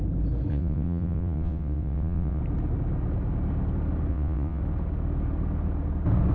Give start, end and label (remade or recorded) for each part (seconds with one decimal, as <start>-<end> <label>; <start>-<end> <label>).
0.0-0.5 recorded; 0.5-2.4 remade; 2.4-4.1 recorded; 4.1-4.6 remade; 4.6-6.3 recorded